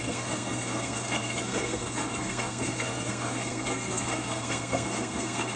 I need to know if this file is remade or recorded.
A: remade